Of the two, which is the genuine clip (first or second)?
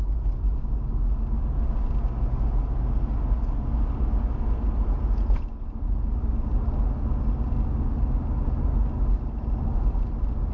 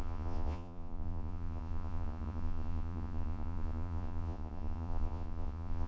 first